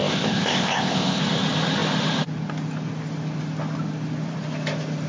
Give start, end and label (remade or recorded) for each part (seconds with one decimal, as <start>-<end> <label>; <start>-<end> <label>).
0.0-1.2 remade; 1.2-5.1 recorded